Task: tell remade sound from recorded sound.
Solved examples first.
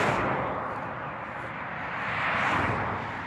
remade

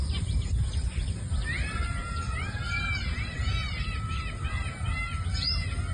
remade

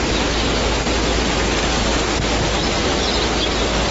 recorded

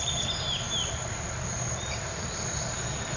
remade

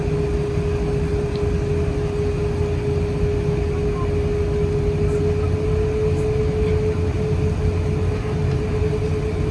recorded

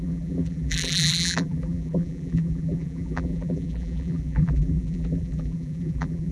remade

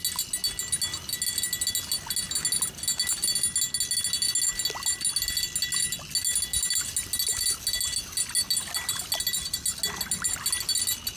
recorded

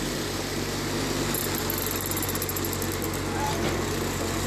recorded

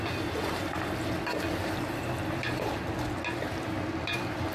recorded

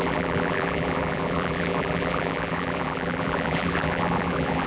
remade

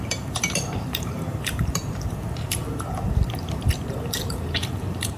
remade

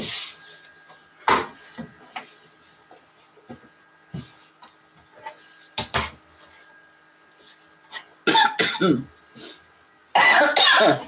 recorded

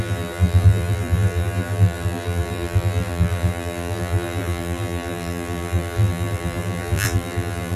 remade